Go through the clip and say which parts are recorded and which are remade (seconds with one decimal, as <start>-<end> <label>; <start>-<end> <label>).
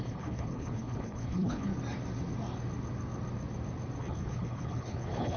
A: 0.0-1.7 remade; 1.7-4.0 recorded; 4.0-5.4 remade